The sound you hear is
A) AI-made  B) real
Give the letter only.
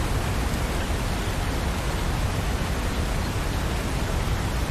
B